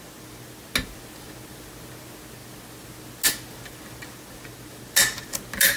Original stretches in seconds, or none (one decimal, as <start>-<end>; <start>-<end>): 0.0-5.8

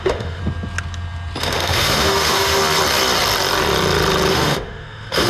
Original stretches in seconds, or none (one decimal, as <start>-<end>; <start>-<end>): 0.4-1.4; 2.6-4.3